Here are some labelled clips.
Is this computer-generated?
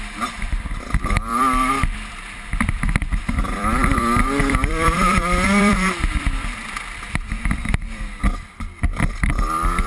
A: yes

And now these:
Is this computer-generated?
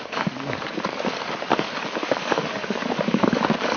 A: yes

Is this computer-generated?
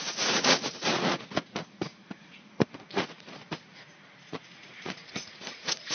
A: yes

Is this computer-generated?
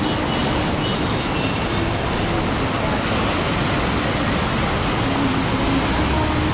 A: no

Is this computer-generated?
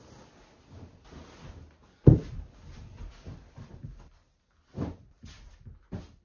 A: no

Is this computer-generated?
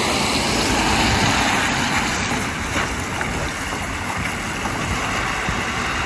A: no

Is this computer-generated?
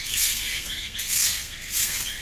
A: yes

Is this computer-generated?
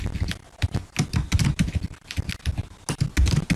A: no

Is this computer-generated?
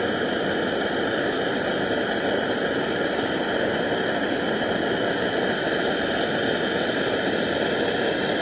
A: no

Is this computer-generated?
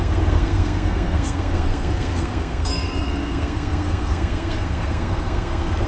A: yes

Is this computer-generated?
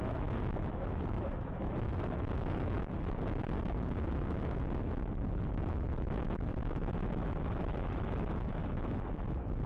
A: yes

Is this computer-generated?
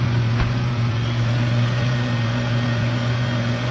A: yes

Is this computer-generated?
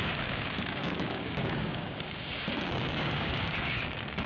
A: yes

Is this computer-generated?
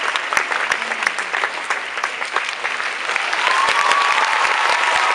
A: no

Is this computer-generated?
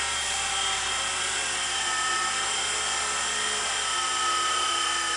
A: no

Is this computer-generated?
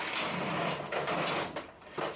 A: no